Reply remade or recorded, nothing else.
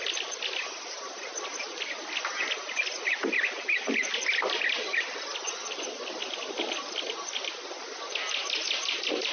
remade